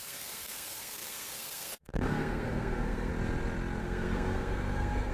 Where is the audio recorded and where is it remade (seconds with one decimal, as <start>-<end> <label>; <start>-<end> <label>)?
0.0-3.1 remade; 3.1-3.8 recorded; 3.8-5.1 remade